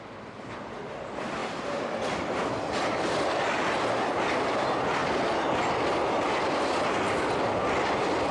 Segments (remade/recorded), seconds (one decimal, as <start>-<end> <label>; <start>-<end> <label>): 0.0-8.3 recorded